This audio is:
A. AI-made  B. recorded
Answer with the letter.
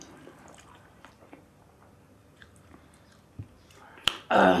A